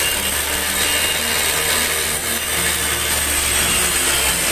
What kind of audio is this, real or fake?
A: real